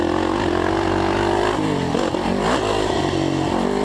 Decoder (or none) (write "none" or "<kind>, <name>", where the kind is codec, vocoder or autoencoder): none